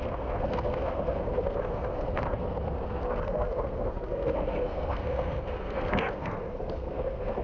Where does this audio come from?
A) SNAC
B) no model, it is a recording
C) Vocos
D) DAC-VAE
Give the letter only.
A